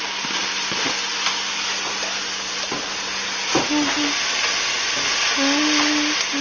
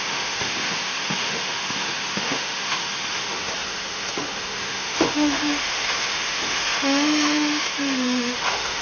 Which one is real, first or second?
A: first